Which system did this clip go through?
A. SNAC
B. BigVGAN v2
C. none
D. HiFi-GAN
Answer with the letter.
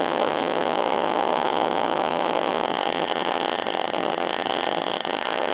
D